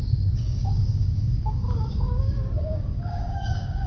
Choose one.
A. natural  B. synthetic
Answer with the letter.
B